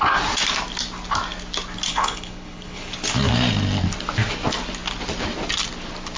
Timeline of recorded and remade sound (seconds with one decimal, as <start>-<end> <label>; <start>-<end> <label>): 0.0-1.9 recorded; 1.9-2.9 remade; 2.9-6.2 recorded